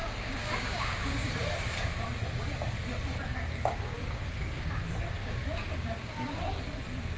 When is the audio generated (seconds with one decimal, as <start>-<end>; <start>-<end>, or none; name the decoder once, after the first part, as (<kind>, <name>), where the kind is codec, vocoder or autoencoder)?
0.0-1.3 (codec, DAC); 3.3-4.8; 5.2-6.6